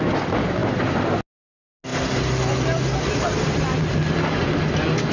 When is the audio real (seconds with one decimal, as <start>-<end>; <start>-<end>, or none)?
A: 0.0-5.1